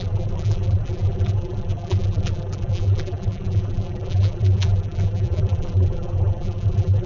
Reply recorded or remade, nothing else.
remade